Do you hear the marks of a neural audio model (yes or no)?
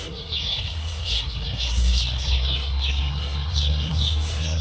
yes